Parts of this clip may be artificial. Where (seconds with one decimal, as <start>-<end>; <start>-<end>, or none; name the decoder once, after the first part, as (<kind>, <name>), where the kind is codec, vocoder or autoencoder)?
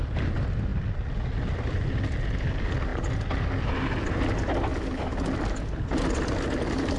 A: none